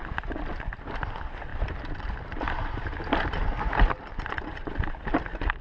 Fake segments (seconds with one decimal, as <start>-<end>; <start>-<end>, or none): none